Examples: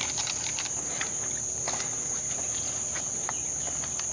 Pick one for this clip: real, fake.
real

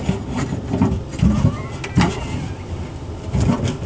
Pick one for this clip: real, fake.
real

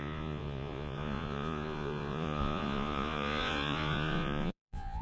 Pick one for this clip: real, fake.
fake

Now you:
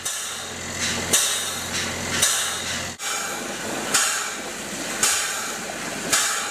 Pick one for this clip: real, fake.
real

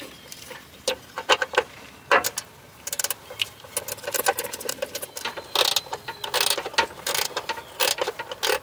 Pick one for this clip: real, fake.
real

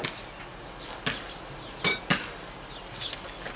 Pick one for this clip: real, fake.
real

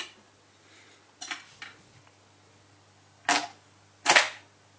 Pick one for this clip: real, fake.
real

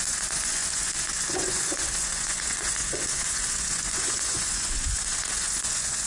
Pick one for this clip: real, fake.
fake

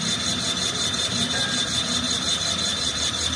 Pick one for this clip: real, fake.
real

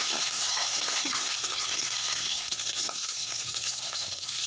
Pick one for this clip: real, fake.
fake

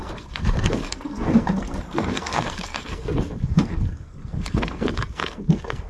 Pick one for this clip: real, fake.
fake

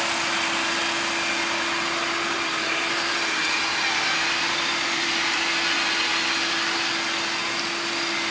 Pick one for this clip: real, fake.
real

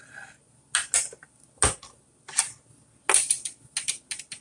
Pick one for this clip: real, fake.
real